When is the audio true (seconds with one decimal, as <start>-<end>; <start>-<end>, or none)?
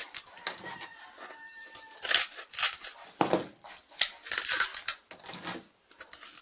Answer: 3.8-6.4